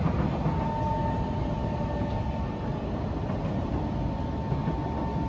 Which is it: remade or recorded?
recorded